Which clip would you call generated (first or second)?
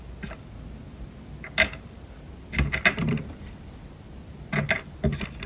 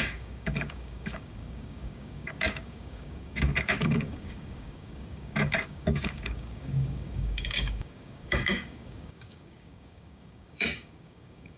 second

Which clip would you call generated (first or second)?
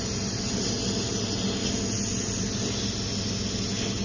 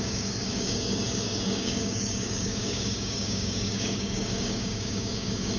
second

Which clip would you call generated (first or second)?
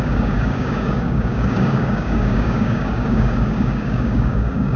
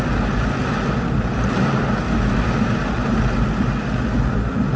first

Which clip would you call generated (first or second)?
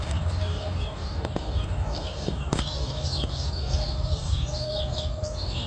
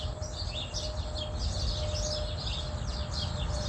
first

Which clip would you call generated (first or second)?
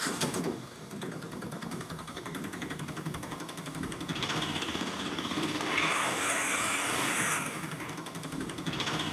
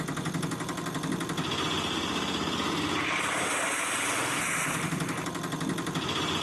first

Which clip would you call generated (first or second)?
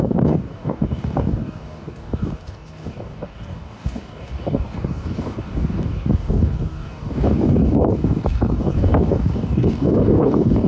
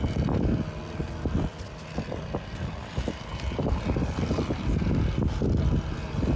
first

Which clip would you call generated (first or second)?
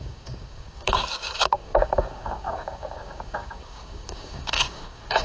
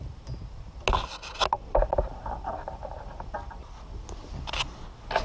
first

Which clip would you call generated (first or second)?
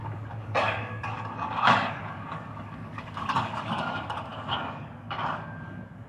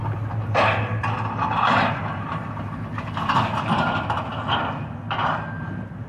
first